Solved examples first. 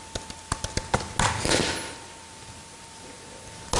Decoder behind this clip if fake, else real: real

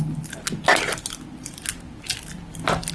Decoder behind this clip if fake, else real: real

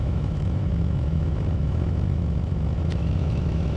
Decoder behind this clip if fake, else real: fake, autoencoder, DAC-VAE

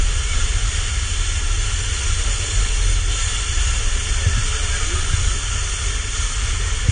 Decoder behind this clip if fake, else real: real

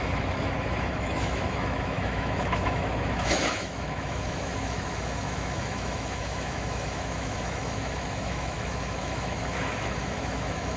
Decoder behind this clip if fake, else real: fake, autoencoder, DAC-VAE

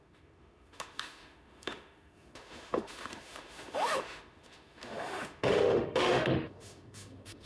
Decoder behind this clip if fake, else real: fake, autoencoder, DAC-VAE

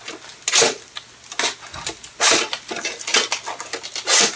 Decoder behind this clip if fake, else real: real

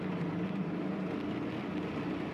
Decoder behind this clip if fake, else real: real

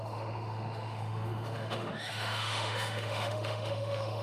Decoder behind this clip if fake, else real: fake, autoencoder, DAC-VAE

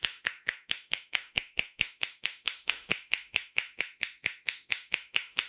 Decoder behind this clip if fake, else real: fake, autoencoder, DAC-VAE